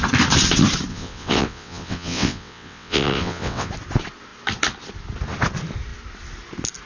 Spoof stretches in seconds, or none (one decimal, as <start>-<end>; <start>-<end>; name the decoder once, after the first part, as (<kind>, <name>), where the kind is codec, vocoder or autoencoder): 0.9-3.7 (vocoder, WaveNeXt)